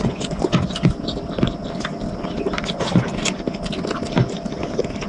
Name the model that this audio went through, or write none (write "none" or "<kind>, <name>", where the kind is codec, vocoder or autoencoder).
none